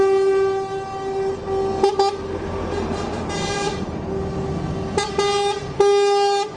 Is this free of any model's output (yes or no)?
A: yes